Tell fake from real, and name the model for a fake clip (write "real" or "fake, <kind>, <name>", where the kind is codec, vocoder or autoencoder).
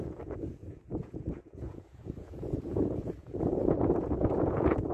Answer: fake, vocoder, Vocos